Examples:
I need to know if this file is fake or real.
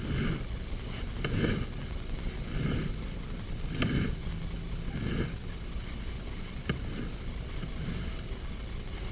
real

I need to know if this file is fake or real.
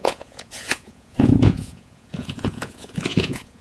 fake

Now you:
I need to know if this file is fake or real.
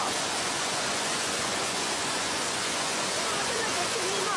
fake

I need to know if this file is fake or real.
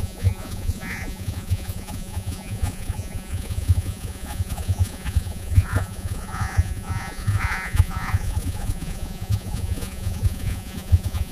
fake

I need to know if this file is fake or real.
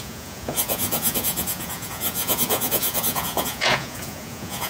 fake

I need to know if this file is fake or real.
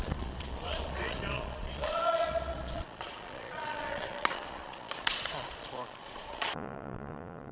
fake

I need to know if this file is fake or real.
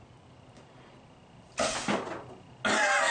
real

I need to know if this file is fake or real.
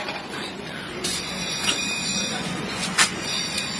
fake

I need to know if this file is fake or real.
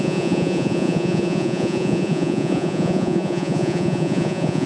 fake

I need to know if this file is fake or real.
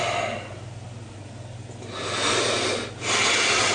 real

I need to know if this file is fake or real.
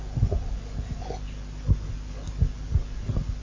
real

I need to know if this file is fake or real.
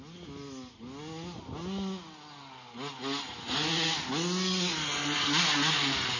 real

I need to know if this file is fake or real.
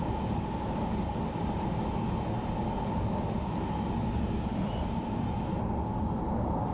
real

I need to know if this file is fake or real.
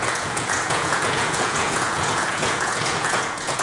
fake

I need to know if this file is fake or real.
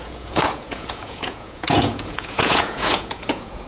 fake